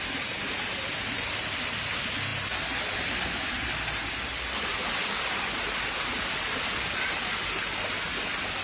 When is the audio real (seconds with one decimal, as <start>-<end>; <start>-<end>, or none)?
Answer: 0.0-8.6